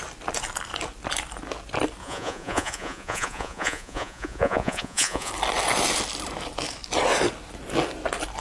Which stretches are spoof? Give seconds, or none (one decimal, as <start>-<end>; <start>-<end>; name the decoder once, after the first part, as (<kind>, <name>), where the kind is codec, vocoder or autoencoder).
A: 2.0-5.3 (vocoder, Vocos)